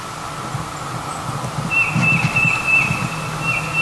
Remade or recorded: recorded